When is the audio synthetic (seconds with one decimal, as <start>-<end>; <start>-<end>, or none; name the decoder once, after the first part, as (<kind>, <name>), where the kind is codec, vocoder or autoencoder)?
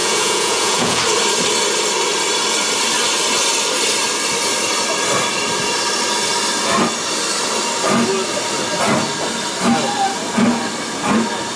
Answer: 0.0-1.0 (vocoder, Vocos)